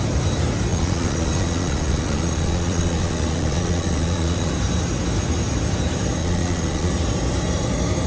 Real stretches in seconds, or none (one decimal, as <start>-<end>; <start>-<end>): 0.0-0.7; 4.5-6.2; 6.9-8.1